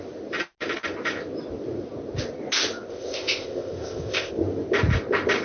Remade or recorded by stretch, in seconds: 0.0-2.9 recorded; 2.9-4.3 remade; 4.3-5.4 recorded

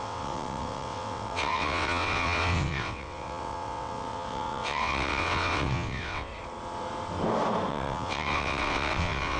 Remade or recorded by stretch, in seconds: 0.0-6.3 remade; 6.3-7.7 recorded; 7.7-9.4 remade